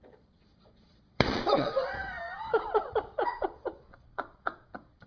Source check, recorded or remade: remade